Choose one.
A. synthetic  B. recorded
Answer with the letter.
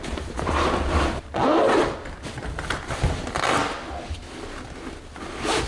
B